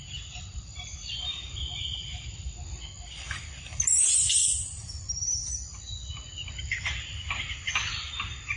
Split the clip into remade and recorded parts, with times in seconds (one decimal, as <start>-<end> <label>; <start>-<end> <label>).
0.0-8.6 recorded